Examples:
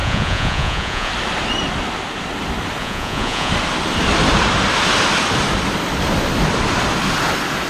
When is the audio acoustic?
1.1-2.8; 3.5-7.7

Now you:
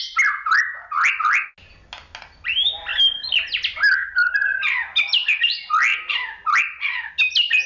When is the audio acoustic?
0.0-7.7

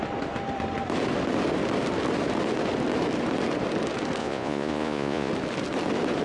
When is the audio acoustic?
0.0-4.2; 5.3-6.2